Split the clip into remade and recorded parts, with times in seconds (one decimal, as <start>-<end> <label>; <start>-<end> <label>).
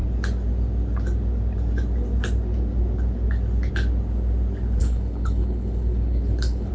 0.0-4.8 recorded; 4.8-6.7 remade